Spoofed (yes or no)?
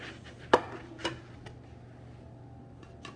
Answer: no